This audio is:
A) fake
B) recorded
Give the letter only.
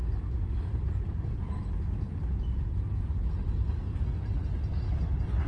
B